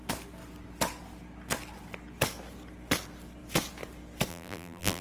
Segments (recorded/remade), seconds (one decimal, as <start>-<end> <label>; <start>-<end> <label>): 0.0-4.3 recorded; 4.3-5.0 remade